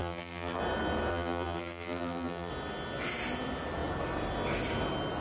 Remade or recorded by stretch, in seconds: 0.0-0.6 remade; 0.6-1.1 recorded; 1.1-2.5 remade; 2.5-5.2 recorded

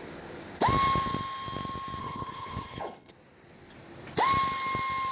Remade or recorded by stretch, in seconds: 0.0-2.0 recorded; 2.0-3.1 remade; 3.1-5.1 recorded